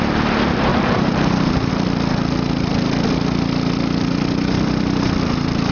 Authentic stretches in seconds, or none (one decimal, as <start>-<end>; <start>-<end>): 0.0-0.7; 1.7-5.7